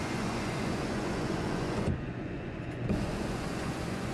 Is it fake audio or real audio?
fake